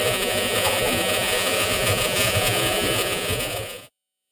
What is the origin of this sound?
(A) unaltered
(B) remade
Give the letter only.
B